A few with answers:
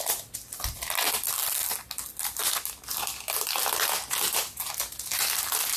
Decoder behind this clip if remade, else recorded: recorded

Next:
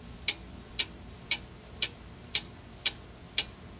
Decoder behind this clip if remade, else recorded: recorded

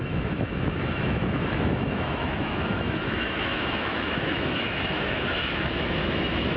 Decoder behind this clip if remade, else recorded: remade, autoencoder, DAC-VAE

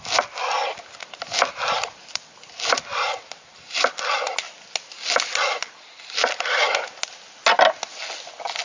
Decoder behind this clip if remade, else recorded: recorded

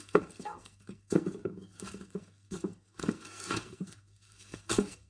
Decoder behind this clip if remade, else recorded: remade, codec, SNAC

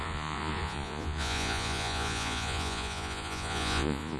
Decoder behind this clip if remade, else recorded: remade, vocoder, Vocos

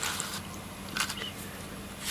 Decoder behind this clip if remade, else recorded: recorded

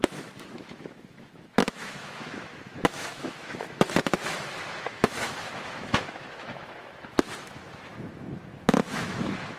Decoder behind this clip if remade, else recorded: remade, autoencoder, DAC-VAE